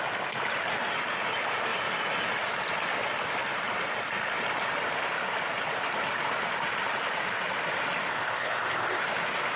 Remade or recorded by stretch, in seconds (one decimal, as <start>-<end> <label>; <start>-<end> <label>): 0.0-8.1 recorded; 8.1-9.0 remade; 9.0-9.6 recorded